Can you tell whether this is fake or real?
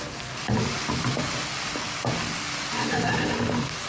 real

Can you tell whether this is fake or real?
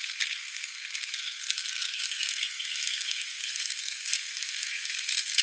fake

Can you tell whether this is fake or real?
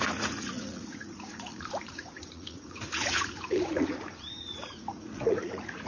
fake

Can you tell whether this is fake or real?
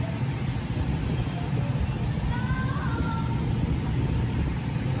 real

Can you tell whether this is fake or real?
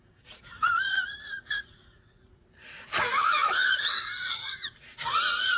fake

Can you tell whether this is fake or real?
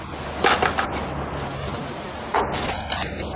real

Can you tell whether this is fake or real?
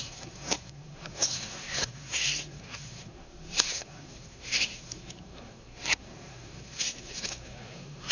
fake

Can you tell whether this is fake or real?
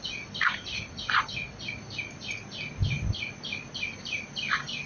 real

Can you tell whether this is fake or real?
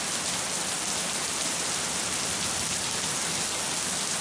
real